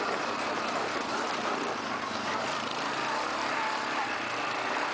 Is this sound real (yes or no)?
yes